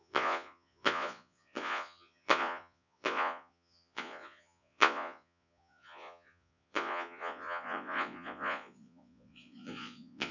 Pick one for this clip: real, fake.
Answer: fake